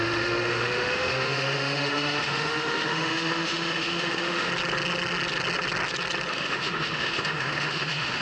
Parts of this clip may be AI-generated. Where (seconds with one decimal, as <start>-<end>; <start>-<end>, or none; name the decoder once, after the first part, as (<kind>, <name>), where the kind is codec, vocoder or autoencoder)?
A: 0.0-4.5 (autoencoder, DAC-VAE); 6.3-8.2